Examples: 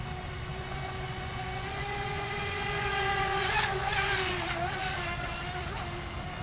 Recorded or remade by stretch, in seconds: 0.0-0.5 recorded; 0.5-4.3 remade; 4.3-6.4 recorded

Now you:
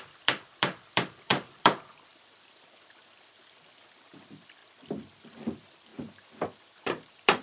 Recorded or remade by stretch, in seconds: 0.0-4.6 remade; 4.6-5.2 recorded; 5.2-5.9 remade; 5.9-6.6 recorded; 6.6-7.4 remade

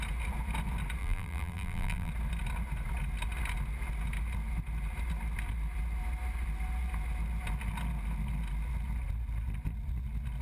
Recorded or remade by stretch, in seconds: 0.0-1.0 recorded; 1.0-2.1 remade; 2.1-10.4 recorded

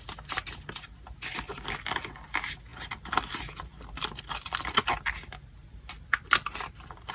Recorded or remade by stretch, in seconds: 0.0-7.1 recorded

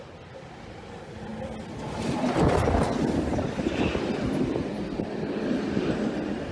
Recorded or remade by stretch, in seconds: 0.0-6.5 recorded

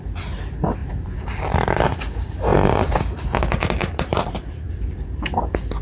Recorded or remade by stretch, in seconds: 0.0-0.8 recorded; 0.8-1.8 remade; 1.8-2.5 recorded; 2.5-3.0 remade; 3.0-3.8 recorded; 3.8-4.7 remade; 4.7-5.8 recorded

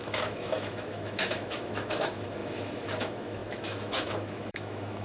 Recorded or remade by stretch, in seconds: 0.0-5.0 remade

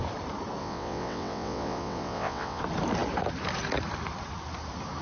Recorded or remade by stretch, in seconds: 0.0-0.6 recorded; 0.6-2.6 remade; 2.6-5.0 recorded